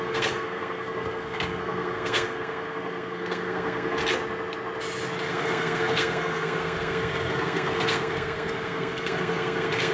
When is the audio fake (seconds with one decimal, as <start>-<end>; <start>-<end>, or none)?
0.0-4.0; 5.3-9.9